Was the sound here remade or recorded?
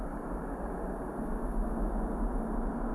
recorded